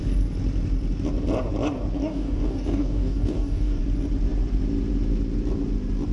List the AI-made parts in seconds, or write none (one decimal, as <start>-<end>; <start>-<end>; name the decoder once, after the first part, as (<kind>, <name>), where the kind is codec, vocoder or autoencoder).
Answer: 2.0-3.8 (codec, DAC)